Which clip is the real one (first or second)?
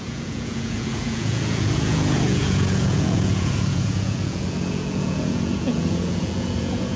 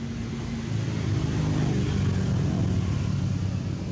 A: second